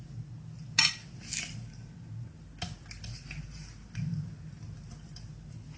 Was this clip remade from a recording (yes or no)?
no